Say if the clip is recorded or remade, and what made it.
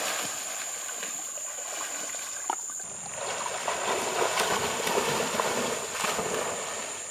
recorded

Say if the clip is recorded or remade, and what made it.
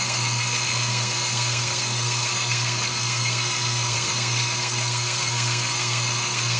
remade, codec, SNAC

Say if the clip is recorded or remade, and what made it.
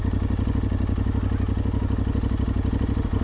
recorded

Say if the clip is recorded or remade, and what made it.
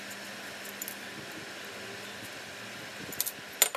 recorded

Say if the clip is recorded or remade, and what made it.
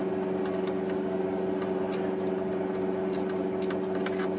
recorded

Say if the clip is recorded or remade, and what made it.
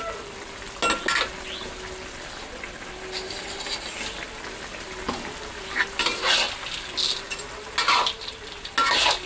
recorded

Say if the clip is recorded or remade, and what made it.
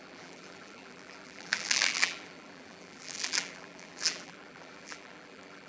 remade, vocoder, BigVGAN v2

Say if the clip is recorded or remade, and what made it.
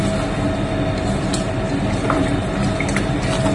recorded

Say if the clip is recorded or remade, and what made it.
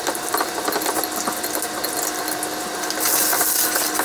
recorded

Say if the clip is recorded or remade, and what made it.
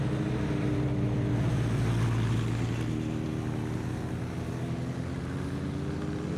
recorded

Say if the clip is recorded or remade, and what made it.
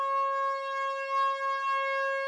recorded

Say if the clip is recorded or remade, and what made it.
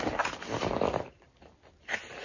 recorded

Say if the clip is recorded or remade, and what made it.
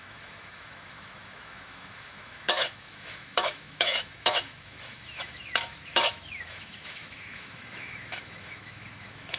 remade, autoencoder, DAC-VAE